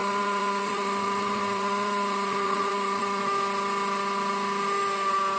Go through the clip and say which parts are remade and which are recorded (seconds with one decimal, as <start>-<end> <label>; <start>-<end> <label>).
0.0-3.2 remade; 3.2-5.4 recorded